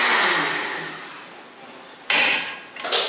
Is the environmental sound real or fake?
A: real